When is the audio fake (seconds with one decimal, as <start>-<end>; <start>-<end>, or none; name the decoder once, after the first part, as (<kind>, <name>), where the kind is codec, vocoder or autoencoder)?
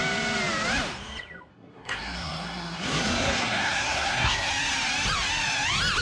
1.5-4.5 (codec, SNAC)